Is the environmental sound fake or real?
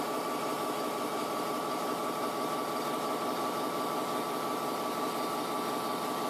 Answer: fake